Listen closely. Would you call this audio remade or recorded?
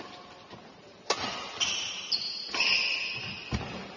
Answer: recorded